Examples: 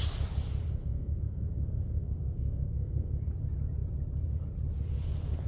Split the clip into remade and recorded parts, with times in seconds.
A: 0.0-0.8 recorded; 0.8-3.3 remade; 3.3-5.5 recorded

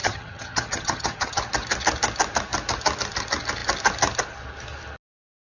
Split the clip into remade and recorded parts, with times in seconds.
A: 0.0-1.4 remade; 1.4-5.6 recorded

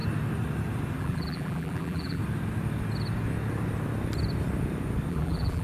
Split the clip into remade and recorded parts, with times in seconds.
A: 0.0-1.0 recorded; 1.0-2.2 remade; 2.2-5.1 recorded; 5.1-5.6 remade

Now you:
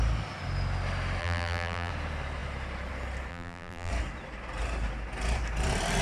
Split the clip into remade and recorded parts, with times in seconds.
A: 0.0-1.2 recorded; 1.2-1.9 remade; 1.9-3.3 recorded; 3.3-3.9 remade; 3.9-6.0 recorded

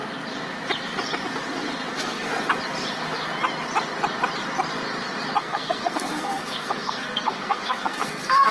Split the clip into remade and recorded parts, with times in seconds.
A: 0.0-1.9 recorded; 1.9-2.3 remade; 2.3-5.4 recorded; 5.4-8.5 remade

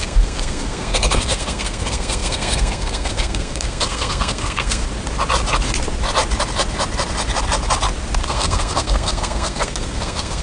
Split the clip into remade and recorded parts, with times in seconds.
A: 0.0-4.8 remade; 4.8-8.3 recorded; 8.3-10.4 remade

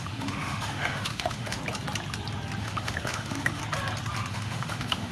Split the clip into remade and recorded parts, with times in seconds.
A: 0.0-1.6 remade; 1.6-2.6 recorded; 2.6-3.6 remade; 3.6-4.3 recorded; 4.3-5.1 remade